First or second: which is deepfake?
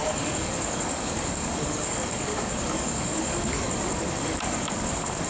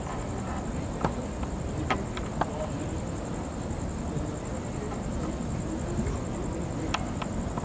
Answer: first